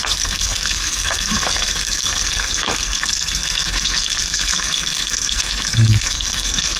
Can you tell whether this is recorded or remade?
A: remade